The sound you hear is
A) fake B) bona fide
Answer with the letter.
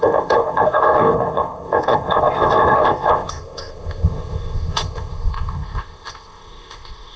A